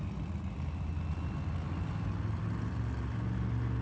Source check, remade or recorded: recorded